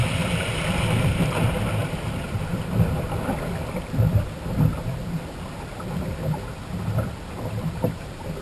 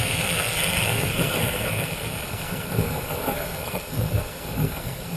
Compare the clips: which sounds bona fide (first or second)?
first